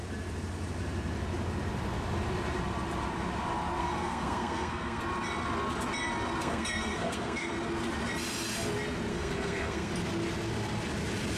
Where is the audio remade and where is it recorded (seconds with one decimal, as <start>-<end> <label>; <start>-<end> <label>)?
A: 0.0-3.8 recorded; 3.8-5.0 remade; 5.0-6.4 recorded; 6.4-7.5 remade; 7.5-9.1 recorded; 9.1-9.9 remade; 9.9-11.4 recorded